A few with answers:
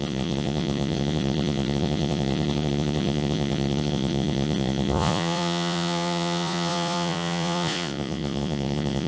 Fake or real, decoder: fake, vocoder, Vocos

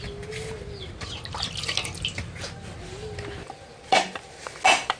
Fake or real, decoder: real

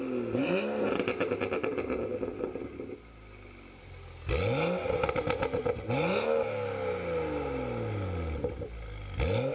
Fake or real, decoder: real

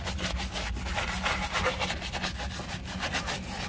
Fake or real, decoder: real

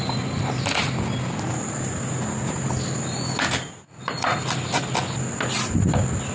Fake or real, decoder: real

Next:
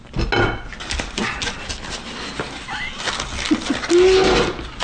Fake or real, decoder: real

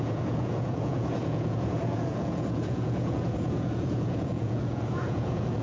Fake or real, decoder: fake, vocoder, Vocos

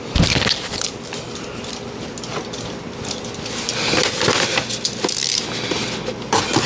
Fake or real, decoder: real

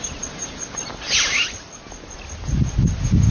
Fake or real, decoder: real